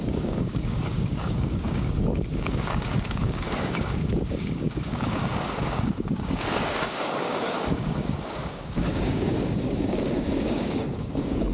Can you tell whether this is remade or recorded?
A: remade